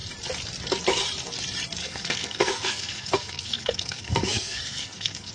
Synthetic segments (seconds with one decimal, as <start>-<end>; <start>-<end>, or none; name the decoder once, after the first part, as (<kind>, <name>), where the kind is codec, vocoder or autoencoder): 1.8-5.3 (codec, SNAC)

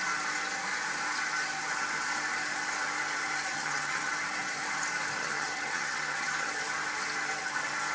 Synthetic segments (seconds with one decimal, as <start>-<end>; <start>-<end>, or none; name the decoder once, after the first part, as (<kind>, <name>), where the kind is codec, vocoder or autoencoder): 3.5-4.1 (vocoder, HiFi-GAN); 5.2-6.5